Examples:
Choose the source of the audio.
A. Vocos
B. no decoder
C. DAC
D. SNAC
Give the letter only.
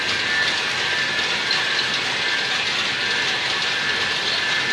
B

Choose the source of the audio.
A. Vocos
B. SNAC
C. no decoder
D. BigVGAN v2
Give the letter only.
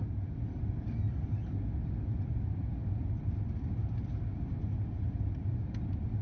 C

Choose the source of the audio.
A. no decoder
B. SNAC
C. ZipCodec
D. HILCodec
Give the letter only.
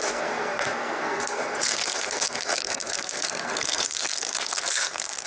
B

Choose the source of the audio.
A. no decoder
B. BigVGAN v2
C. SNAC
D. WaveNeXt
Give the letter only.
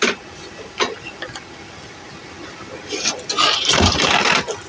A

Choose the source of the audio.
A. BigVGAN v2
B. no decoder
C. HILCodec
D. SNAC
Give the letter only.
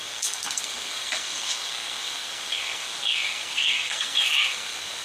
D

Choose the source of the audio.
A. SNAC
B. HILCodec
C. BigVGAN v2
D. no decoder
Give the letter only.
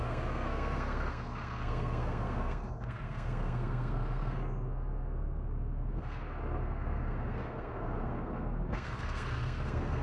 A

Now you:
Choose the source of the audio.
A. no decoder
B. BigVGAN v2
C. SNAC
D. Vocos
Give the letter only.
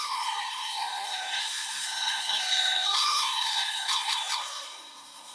C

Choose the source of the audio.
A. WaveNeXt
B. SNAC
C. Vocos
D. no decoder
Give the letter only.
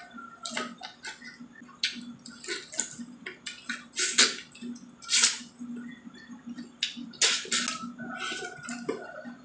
D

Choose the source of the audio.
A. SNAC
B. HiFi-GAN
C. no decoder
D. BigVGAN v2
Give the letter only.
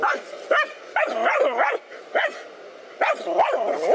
C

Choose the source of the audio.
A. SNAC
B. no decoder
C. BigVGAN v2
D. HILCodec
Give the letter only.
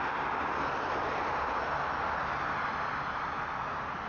B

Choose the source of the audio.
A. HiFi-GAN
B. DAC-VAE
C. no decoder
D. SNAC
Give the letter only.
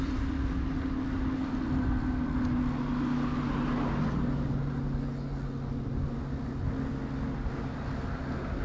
C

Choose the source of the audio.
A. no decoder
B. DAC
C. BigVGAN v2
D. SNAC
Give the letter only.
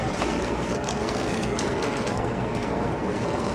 D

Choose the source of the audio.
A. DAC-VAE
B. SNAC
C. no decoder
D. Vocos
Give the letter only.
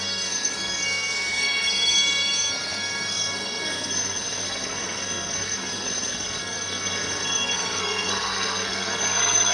B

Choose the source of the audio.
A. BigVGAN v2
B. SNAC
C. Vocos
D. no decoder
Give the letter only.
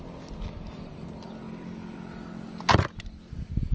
D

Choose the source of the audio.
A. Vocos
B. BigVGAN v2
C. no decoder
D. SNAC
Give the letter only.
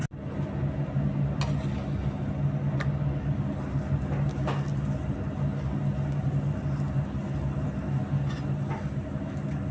C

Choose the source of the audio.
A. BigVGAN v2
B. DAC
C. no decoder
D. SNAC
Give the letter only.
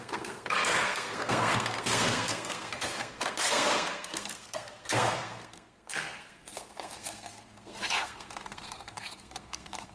D